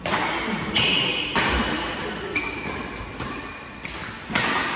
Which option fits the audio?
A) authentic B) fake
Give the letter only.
A